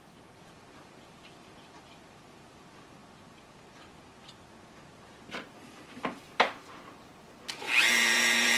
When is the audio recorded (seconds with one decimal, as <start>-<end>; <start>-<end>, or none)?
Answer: 3.0-7.8